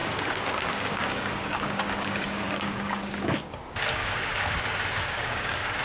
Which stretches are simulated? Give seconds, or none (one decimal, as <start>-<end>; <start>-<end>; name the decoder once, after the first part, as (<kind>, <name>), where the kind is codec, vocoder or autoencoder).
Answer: 0.0-3.5 (codec, DAC); 4.0-4.6; 5.0-5.8

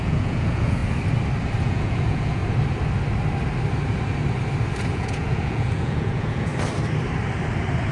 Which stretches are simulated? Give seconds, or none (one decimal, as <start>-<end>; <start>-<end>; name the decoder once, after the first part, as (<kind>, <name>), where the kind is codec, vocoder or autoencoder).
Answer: 0.0-0.8 (vocoder, Vocos); 1.6-2.4; 4.8-6.5

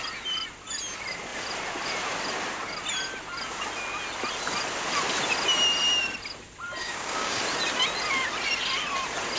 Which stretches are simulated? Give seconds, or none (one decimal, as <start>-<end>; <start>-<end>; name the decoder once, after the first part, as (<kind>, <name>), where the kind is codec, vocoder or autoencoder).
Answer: 6.8-7.4 (codec, DAC)